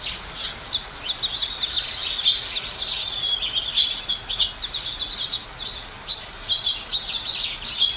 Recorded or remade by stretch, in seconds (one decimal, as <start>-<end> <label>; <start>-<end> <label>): 0.0-8.0 recorded